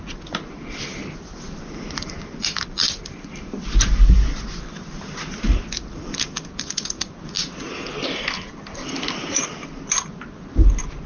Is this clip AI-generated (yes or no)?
no